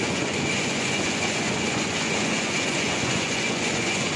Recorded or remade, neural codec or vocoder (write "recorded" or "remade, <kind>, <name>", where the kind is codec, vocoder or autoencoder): remade, vocoder, Vocos